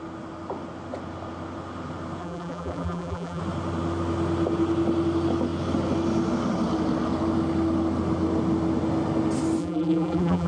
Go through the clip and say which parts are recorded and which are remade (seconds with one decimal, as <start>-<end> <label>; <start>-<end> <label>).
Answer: 0.0-2.2 recorded; 2.2-3.4 remade; 3.4-9.6 recorded; 9.6-10.5 remade